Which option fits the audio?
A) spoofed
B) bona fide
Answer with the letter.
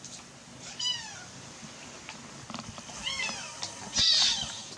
B